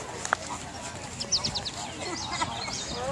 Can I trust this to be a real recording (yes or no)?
yes